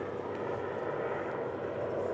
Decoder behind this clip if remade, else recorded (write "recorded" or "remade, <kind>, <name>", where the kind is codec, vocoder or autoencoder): recorded